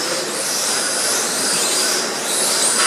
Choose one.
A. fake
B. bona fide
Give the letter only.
A